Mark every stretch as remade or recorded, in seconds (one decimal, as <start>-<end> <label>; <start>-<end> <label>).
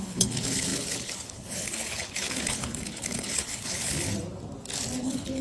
0.0-4.1 remade; 4.1-5.0 recorded; 5.0-5.4 remade